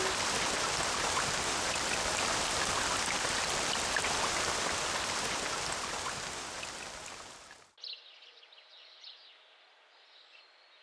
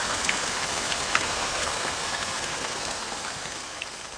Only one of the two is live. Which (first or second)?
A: first